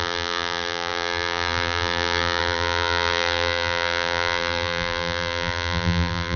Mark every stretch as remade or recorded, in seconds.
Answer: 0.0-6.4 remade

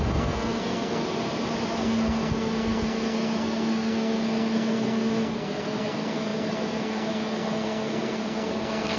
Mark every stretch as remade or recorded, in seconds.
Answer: 0.0-1.0 remade; 1.0-1.8 recorded; 1.8-9.0 remade

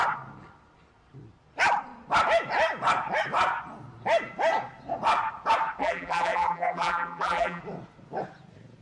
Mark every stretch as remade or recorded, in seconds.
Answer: 0.0-5.8 recorded; 5.8-7.6 remade; 7.6-8.8 recorded

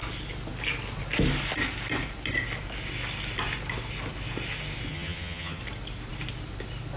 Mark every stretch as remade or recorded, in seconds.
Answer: 0.0-4.9 recorded; 4.9-5.6 remade; 5.6-7.0 recorded

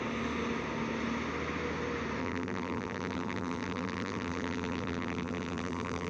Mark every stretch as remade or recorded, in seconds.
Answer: 0.0-2.2 recorded; 2.2-6.1 remade